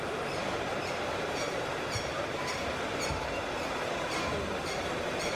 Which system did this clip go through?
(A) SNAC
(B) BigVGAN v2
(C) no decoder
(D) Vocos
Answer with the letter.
B